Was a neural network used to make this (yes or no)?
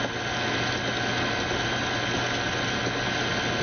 no